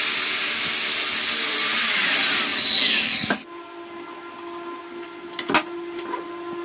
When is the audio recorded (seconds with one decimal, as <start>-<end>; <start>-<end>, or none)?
0.0-6.6